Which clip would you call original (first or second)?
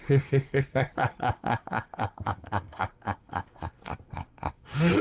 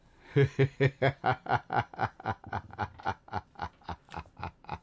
second